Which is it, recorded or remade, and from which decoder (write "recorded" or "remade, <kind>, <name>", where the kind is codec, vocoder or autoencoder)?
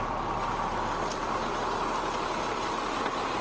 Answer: recorded